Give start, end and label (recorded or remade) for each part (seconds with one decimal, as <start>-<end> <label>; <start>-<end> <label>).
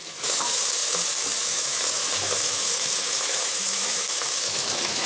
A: 0.0-5.1 remade